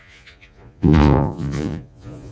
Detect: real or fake fake